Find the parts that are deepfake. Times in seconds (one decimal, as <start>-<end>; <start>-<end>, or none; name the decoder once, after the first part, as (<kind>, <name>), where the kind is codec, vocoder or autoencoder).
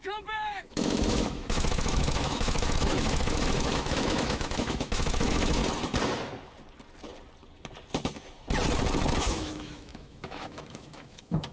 0.0-5.6 (autoencoder, DAC-VAE); 9.2-11.5